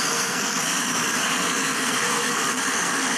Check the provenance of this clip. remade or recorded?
remade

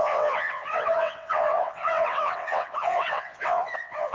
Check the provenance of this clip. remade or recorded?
remade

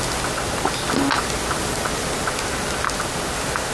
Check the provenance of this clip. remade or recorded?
recorded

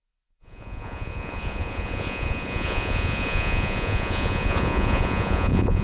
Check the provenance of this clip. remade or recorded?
remade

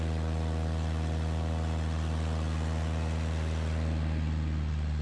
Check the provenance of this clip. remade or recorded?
recorded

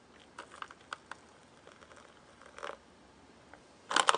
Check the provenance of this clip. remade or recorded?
recorded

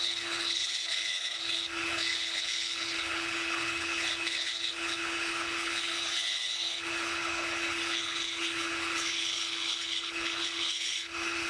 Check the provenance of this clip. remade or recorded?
remade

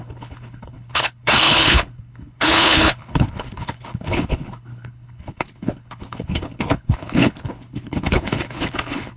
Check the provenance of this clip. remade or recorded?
remade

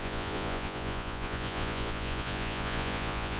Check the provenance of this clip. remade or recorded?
remade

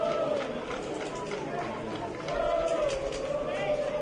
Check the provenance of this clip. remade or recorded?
recorded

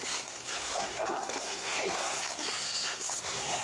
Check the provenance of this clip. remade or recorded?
remade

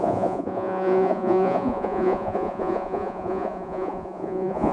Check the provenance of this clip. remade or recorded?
remade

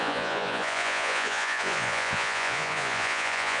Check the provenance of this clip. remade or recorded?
remade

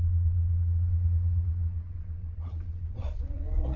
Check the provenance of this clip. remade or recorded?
remade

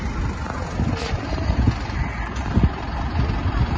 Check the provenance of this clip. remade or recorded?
recorded